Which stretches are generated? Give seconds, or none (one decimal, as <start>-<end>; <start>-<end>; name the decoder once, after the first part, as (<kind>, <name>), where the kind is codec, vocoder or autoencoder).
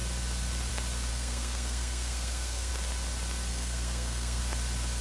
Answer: 1.1-2.7 (codec, SNAC); 3.5-4.4